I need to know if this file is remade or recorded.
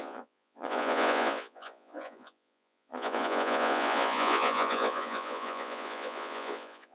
remade